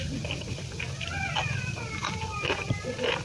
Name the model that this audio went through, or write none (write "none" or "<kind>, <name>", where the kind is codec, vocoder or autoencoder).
none